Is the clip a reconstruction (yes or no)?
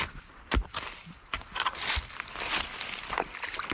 no